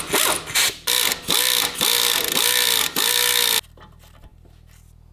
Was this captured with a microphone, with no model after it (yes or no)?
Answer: yes